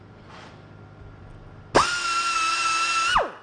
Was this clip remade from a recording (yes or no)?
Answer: no